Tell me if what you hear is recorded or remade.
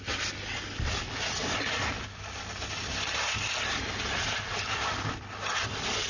recorded